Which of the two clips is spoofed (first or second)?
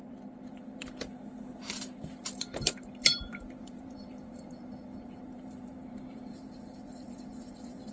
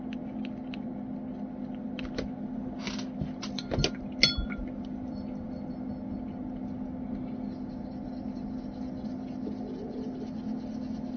first